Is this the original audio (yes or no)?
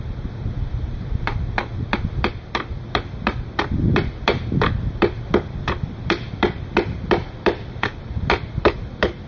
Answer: no